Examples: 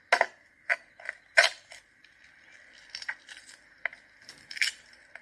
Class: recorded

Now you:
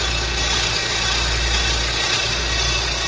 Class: recorded